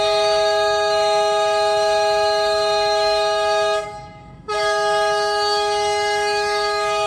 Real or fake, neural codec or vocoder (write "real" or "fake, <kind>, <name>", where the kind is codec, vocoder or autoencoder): fake, autoencoder, DAC-VAE